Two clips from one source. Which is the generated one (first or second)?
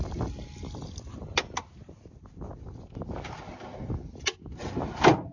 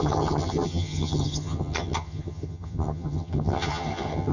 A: second